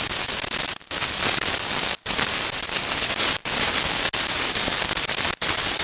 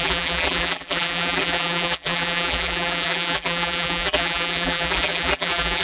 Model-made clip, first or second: second